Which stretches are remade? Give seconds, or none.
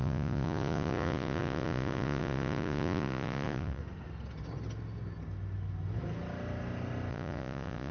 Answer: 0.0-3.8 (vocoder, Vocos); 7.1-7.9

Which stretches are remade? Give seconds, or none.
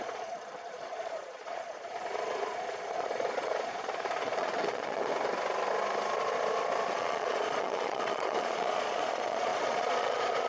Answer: 0.0-5.1 (vocoder, Vocos); 6.9-10.5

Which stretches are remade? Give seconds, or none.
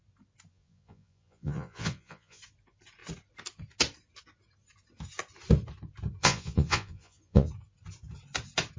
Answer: 0.5-2.4 (vocoder, Vocos); 6.2-7.5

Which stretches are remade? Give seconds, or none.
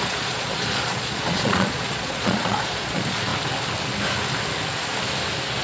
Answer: 0.0-3.3 (vocoder, Vocos)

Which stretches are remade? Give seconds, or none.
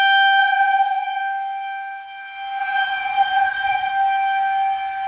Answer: 0.4-1.2 (vocoder, Vocos); 2.6-3.9